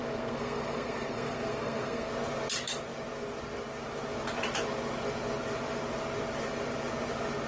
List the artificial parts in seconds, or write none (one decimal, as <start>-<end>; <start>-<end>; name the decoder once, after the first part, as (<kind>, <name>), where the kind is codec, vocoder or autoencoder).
0.0-2.1 (codec, SNAC)